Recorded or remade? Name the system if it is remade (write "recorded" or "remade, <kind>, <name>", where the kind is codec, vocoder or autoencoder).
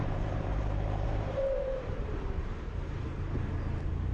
remade, vocoder, BigVGAN v2